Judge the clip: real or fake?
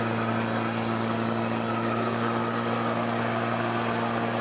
real